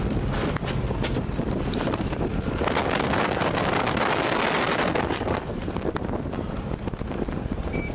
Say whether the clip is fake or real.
real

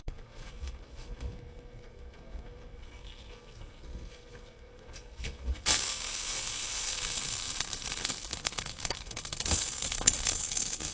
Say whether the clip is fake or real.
fake